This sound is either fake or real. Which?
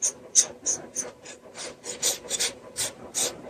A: fake